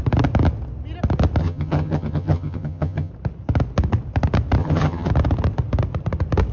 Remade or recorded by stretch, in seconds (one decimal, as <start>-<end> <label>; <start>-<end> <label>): 0.0-1.4 recorded; 1.4-3.1 remade; 3.1-4.6 recorded; 4.6-5.1 remade; 5.1-6.5 recorded